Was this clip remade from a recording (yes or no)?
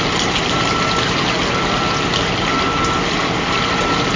no